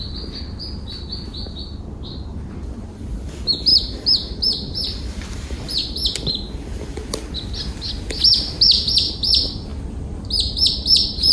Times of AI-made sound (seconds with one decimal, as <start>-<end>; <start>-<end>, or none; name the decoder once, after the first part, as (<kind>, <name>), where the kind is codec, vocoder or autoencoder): 2.3-3.0 (vocoder, BigVGAN v2); 3.7-6.3